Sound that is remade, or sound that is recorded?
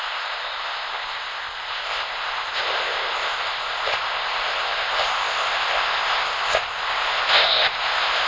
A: remade